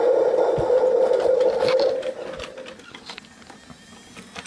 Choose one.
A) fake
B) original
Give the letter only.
B